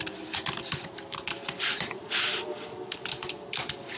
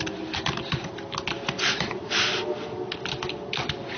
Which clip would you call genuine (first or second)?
second